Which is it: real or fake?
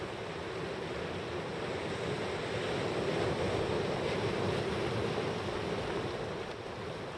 real